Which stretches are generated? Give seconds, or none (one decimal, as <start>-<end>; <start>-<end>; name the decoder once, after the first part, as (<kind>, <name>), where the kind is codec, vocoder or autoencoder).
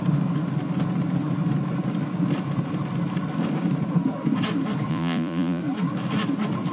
4.9-5.6 (vocoder, Vocos)